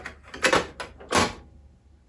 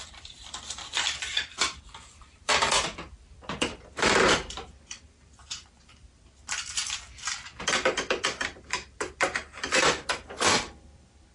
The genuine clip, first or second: first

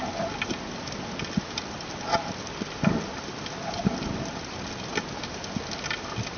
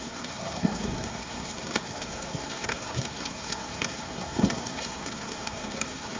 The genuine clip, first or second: first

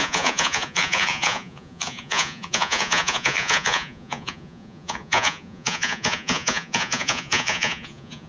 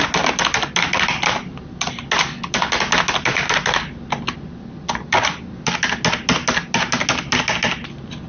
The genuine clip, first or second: second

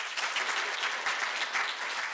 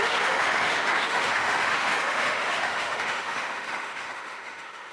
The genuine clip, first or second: first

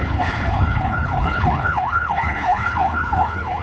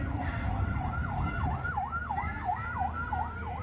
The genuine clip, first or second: second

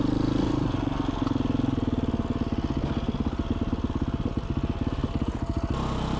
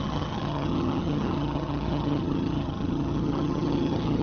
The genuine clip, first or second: first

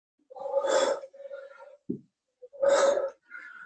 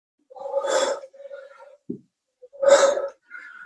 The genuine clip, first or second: first